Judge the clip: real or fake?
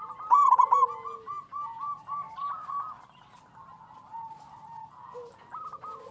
real